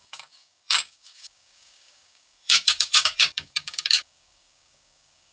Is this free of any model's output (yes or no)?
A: no